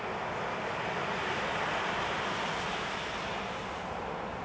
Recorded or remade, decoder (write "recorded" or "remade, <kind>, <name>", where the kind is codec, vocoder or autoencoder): recorded